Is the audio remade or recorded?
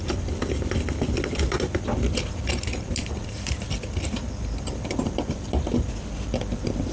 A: recorded